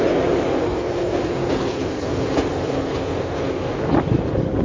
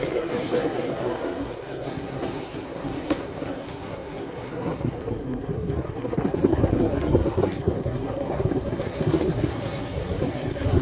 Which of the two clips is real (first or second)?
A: first